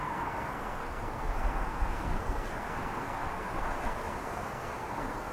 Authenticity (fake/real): fake